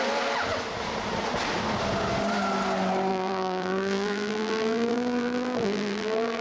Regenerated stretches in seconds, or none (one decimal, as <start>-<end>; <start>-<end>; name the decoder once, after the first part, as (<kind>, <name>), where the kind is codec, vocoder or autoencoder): 3.1-6.4 (vocoder, BigVGAN v2)